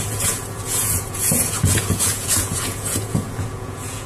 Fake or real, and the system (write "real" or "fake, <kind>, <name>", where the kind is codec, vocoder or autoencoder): fake, vocoder, Vocos